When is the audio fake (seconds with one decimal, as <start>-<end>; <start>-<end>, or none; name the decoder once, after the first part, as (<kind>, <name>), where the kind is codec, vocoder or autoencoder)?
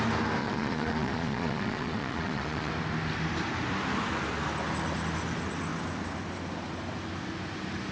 0.4-2.7 (vocoder, Vocos)